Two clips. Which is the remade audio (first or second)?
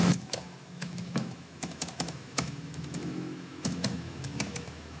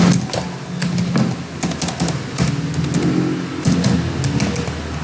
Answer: first